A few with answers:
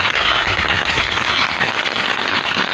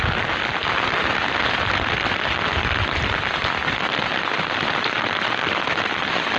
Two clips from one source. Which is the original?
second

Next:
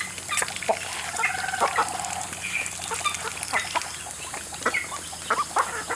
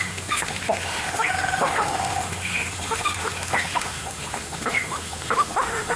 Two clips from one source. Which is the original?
first